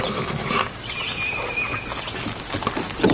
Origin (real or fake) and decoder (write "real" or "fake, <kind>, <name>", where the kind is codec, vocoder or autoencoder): real